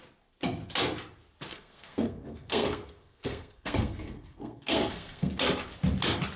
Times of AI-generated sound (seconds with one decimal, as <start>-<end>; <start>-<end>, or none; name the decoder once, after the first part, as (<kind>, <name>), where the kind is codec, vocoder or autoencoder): 1.5-5.3 (codec, SNAC)